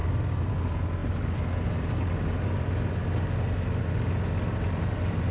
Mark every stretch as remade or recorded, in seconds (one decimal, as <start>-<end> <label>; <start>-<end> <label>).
0.0-5.3 recorded

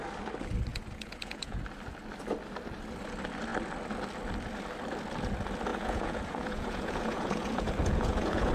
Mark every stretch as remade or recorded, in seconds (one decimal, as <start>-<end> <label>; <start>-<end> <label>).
0.0-0.7 recorded; 0.7-1.6 remade; 1.6-5.7 recorded; 5.7-8.5 remade

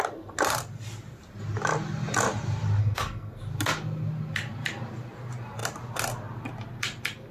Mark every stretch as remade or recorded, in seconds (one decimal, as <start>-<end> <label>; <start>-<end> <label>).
0.0-2.8 recorded; 2.8-3.4 remade; 3.4-7.3 recorded

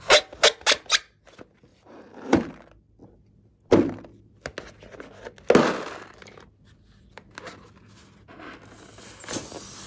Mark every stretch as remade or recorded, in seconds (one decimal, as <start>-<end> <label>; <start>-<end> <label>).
0.0-1.7 recorded; 1.7-2.5 remade; 2.5-9.9 recorded